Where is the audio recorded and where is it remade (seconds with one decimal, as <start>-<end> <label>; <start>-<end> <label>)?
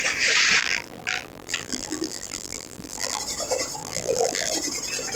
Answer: 0.0-0.6 recorded; 0.6-3.2 remade; 3.2-3.8 recorded; 3.8-4.5 remade; 4.5-5.2 recorded